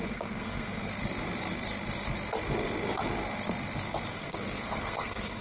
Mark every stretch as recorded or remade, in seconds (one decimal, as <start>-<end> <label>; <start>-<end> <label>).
0.0-0.9 remade; 0.9-4.1 recorded; 4.1-5.4 remade